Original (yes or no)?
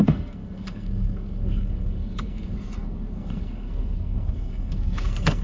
no